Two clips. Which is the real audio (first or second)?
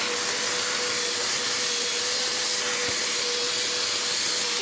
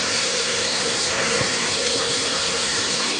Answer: first